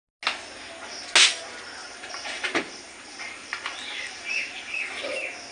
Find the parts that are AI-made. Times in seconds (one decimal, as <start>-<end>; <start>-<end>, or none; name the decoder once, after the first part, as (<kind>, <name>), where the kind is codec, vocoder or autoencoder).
1.8-4.9 (vocoder, BigVGAN v2)